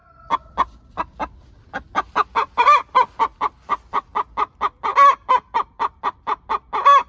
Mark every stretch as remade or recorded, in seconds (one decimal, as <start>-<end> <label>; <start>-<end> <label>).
0.0-4.9 recorded; 4.9-6.0 remade; 6.0-7.1 recorded